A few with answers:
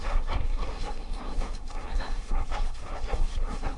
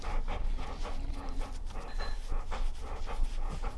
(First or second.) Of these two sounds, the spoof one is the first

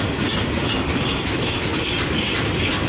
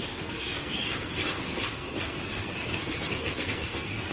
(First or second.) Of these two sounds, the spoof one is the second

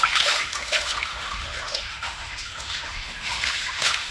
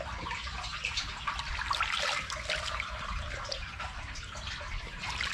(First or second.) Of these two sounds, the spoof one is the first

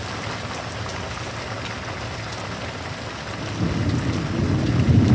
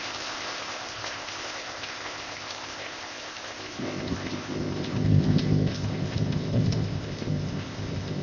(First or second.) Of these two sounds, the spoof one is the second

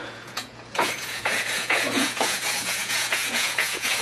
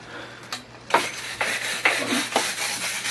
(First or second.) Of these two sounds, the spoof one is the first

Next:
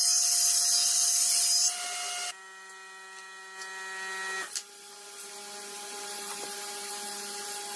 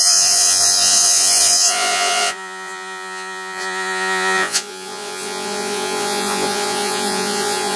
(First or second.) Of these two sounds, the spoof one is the second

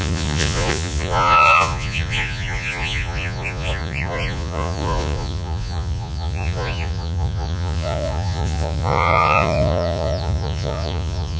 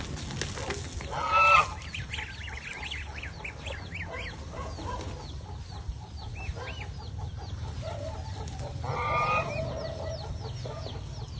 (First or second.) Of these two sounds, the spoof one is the first